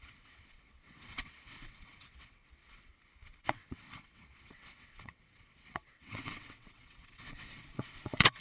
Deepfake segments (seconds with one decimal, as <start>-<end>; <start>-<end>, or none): 0.0-2.9; 3.4-8.4